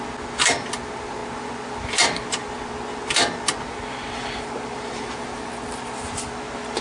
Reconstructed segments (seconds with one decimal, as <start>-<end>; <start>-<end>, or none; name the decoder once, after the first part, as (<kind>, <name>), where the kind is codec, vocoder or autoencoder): none